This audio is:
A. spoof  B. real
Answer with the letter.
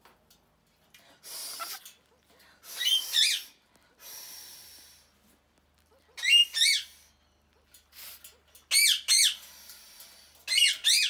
B